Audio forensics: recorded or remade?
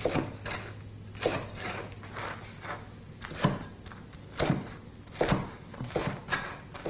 recorded